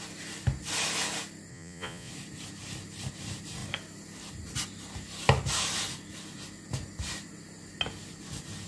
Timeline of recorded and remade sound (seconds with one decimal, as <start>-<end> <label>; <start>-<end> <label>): 0.0-1.5 recorded; 1.5-2.1 remade; 2.1-8.7 recorded

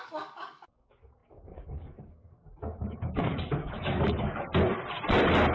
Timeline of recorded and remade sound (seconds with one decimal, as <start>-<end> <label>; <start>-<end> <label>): 0.0-4.5 remade; 4.5-5.5 recorded

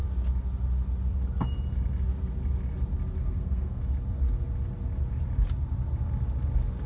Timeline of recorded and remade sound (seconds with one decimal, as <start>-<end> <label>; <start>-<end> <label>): 0.0-3.2 recorded; 3.2-3.8 remade; 3.8-6.9 recorded

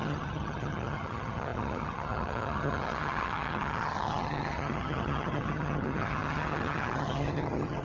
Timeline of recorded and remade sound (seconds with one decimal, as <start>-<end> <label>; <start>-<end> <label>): 0.0-7.8 remade